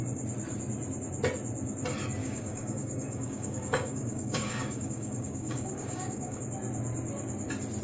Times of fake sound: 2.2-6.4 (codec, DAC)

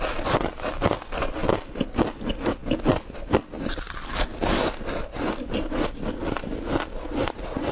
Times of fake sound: none

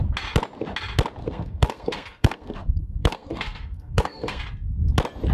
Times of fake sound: 1.2-4.4 (codec, SNAC)

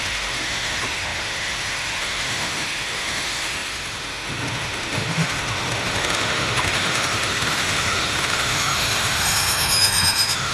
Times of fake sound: 0.0-10.5 (autoencoder, DAC-VAE)

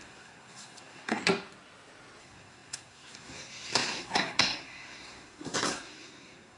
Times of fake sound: 0.0-1.2 (codec, SNAC); 2.2-6.6